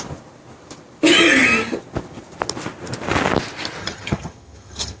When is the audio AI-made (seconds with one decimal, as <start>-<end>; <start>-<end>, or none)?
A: 3.8-5.0